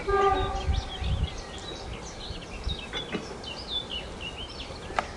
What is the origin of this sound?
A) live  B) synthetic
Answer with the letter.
A